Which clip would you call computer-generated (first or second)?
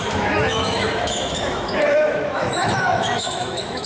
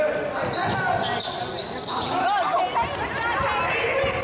first